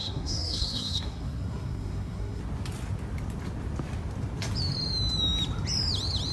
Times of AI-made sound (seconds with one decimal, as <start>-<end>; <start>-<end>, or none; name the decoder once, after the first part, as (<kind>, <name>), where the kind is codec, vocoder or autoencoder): 0.0-2.4 (codec, SNAC)

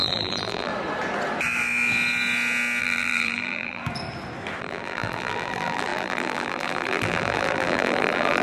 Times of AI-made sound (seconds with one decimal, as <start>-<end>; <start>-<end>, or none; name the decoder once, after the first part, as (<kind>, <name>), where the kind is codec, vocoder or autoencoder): 0.0-0.7 (vocoder, BigVGAN v2); 2.8-3.8; 4.6-8.4